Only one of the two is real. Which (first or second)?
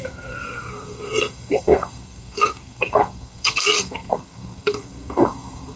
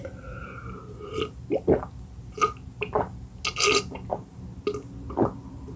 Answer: second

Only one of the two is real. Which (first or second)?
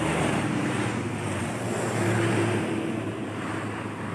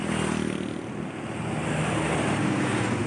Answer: second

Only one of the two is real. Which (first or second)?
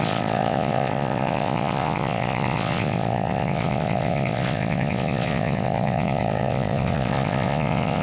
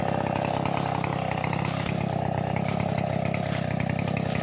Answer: second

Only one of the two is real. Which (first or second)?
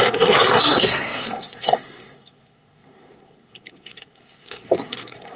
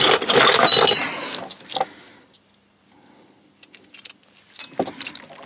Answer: second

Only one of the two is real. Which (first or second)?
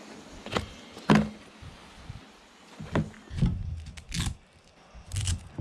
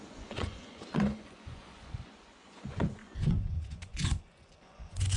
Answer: first